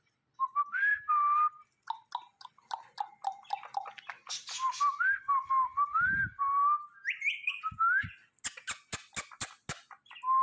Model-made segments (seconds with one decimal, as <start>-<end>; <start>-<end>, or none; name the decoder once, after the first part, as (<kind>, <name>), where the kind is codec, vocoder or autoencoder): 0.9-1.6 (vocoder, BigVGAN v2)